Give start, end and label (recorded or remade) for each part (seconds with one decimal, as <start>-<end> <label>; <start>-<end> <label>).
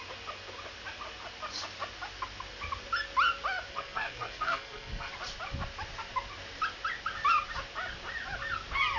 0.0-3.7 recorded; 3.7-5.1 remade; 5.1-9.0 recorded